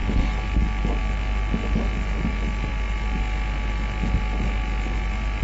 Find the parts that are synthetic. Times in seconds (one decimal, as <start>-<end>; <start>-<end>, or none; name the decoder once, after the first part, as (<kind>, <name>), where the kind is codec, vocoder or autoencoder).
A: none